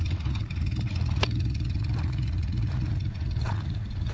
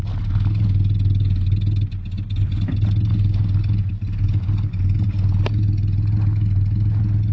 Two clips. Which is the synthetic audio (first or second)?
first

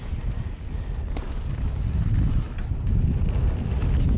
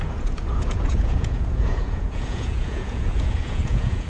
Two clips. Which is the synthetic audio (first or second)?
second